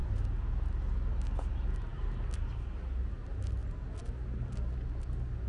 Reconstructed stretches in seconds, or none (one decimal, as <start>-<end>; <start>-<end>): none